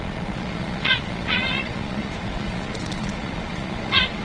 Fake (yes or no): yes